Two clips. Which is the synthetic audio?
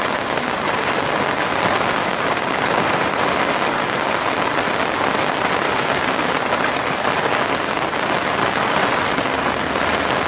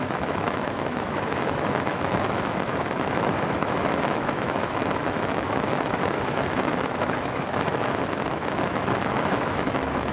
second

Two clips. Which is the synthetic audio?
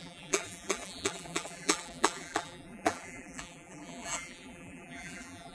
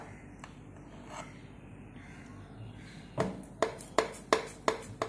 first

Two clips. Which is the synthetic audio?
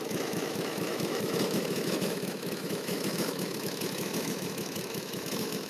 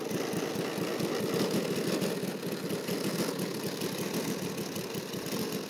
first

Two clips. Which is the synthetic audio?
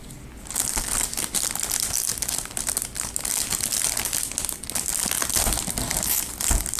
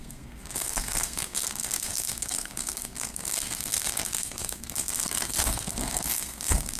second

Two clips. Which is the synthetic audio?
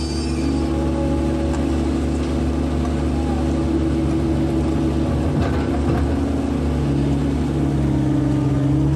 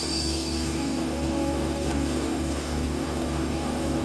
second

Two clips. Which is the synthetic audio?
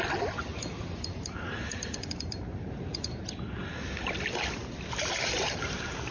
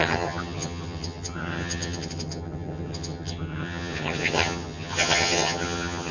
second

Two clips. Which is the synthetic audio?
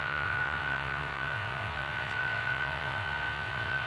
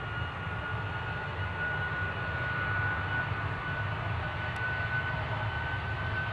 first